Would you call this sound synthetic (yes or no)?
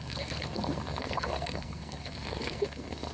yes